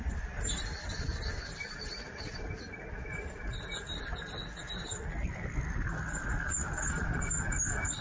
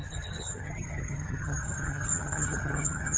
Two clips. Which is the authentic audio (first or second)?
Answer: first